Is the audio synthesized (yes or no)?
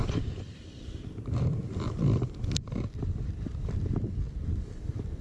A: yes